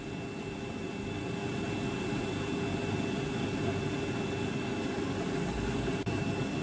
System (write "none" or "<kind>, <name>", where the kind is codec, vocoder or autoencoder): none